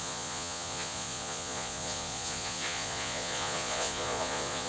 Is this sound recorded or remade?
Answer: remade